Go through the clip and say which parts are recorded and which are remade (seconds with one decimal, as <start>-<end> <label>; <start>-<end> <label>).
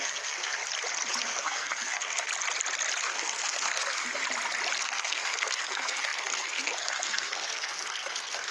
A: 0.0-0.6 remade; 0.6-1.2 recorded; 1.2-2.3 remade; 2.3-3.0 recorded; 3.0-4.2 remade; 4.2-4.8 recorded; 4.8-8.5 remade